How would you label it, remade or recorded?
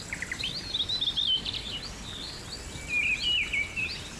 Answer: recorded